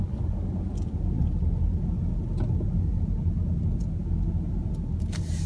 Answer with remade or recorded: recorded